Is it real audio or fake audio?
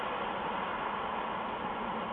real